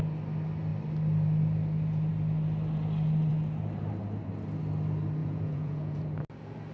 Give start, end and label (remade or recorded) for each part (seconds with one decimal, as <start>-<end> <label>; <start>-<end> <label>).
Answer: 0.0-5.2 recorded; 5.2-6.2 remade; 6.2-6.7 recorded